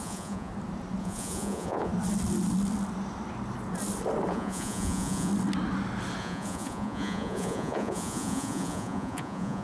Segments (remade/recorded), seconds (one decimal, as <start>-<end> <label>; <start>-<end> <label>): 0.0-0.5 remade; 0.5-1.0 recorded; 1.0-1.9 remade; 1.9-4.3 recorded; 4.3-5.3 remade; 5.3-6.2 recorded; 6.2-9.6 remade